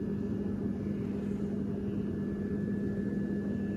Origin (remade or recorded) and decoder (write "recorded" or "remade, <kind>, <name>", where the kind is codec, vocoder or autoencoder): recorded